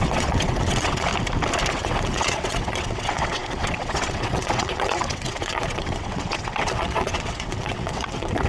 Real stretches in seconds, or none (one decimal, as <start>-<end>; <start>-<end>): 1.1-1.7